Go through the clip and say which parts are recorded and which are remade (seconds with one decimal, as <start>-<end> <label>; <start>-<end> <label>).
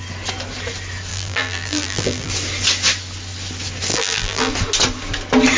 0.0-1.1 recorded; 1.1-2.3 remade; 2.3-3.9 recorded; 3.9-4.5 remade; 4.5-5.6 recorded